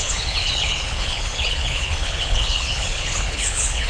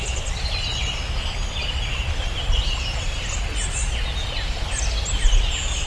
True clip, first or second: second